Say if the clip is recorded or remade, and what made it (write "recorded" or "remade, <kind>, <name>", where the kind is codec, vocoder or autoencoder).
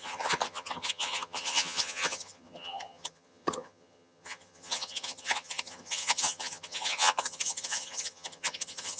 remade, vocoder, HiFi-GAN